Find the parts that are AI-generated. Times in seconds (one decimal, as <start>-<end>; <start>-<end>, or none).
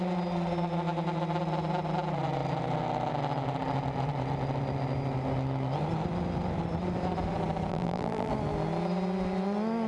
7.7-8.3